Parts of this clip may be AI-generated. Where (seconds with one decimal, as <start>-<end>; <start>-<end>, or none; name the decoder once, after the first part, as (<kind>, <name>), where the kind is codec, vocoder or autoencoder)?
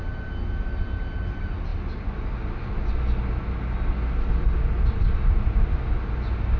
none